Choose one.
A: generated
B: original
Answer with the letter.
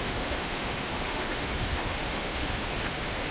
A